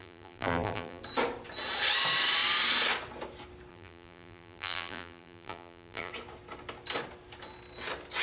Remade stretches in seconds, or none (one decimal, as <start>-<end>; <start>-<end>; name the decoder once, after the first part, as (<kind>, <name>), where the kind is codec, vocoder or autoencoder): 0.0-1.0 (vocoder, BigVGAN v2); 3.7-6.1